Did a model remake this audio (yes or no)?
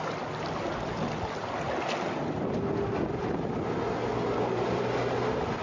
no